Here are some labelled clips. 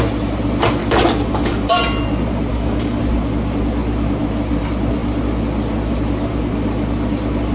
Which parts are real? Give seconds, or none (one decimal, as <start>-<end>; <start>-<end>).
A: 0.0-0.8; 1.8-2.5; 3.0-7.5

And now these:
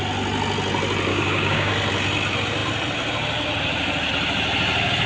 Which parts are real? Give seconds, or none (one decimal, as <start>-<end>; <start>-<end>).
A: 0.0-1.1; 1.7-5.1

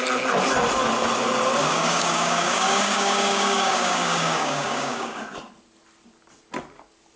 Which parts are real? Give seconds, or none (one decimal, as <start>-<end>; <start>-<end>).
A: 0.0-1.6; 5.2-7.2